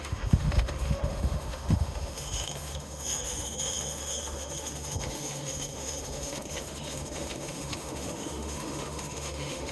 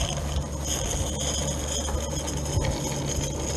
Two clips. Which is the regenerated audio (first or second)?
first